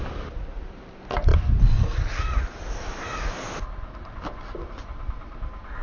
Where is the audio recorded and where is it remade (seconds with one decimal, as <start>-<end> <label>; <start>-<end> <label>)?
0.0-5.8 recorded